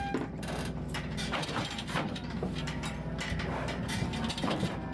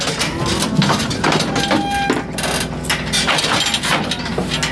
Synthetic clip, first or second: first